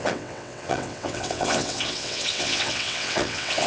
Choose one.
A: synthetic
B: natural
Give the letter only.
A